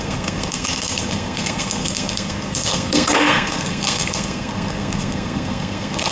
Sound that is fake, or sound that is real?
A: fake